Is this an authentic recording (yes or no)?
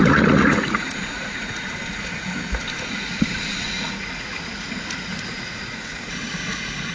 no